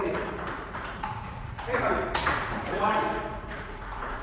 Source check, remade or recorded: remade